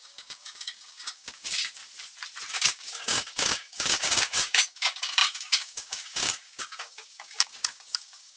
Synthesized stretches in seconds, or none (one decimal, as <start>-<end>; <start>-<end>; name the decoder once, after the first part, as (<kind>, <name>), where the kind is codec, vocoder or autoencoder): 0.0-1.8 (codec, DAC); 2.5-8.4

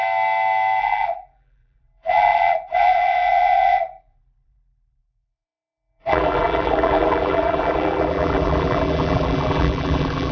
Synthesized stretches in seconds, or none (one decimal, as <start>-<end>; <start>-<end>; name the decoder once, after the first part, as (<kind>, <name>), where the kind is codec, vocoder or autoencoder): 0.8-10.3 (vocoder, BigVGAN v2)

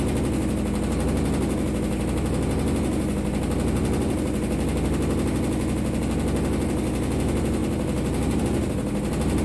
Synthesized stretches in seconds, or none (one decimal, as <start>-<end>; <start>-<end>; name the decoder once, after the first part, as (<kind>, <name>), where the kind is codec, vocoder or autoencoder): none

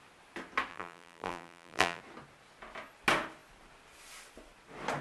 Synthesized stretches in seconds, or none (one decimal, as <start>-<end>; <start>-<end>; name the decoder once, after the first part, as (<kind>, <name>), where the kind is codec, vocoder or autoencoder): 0.7-2.0 (vocoder, BigVGAN v2)

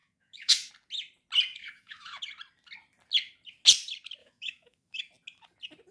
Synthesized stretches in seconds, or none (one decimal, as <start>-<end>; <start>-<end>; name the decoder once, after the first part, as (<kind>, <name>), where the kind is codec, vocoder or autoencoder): 0.0-0.7 (autoencoder, DAC-VAE); 1.6-2.2; 4.2-5.0

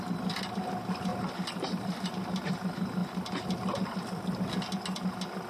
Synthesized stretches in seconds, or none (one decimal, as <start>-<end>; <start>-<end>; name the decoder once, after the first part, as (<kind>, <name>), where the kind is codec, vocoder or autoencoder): 1.1-2.1 (vocoder, BigVGAN v2)

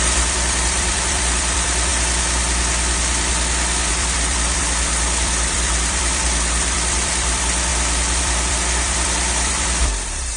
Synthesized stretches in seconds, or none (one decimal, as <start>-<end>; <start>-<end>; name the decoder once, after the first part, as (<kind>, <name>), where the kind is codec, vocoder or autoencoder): 0.0-1.9 (vocoder, BigVGAN v2); 3.9-7.7; 8.2-10.4

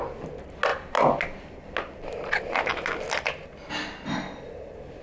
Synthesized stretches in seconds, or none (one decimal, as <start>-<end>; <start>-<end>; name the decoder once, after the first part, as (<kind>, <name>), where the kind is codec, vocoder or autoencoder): none